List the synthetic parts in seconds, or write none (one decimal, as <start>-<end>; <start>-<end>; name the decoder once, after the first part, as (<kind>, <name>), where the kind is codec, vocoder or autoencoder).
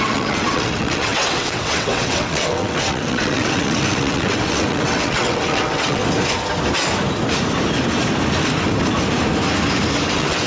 0.0-6.0 (vocoder, WaveNeXt); 10.1-10.5